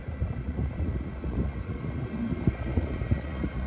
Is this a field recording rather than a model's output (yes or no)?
no